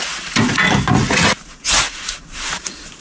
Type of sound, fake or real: fake